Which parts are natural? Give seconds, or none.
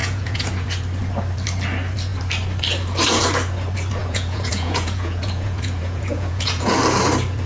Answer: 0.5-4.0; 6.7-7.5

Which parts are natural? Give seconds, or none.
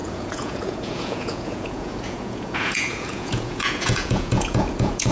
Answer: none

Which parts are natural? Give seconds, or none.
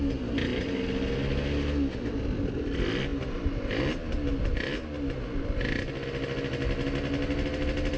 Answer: 0.0-8.0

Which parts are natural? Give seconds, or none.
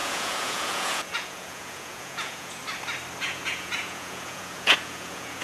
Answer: 2.6-3.2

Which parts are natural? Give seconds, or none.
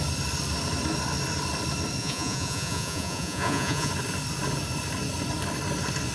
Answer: 0.0-2.0; 3.9-6.1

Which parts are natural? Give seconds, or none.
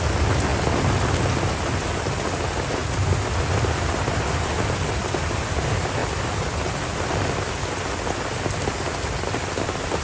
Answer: 0.0-10.0